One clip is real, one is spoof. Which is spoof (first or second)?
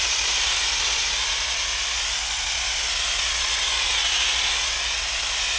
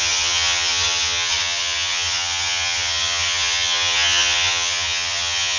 second